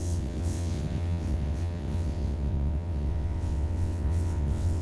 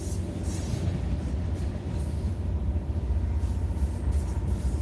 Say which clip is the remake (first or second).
first